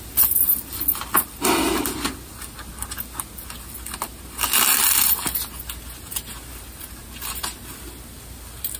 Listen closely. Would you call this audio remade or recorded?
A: recorded